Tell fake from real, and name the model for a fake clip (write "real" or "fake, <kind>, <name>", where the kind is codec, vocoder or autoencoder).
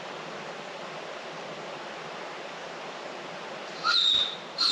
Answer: real